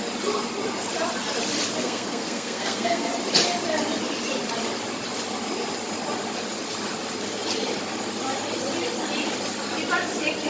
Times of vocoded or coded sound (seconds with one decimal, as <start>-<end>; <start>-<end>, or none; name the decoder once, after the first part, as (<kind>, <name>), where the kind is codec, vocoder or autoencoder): 1.8-3.1 (codec, SNAC)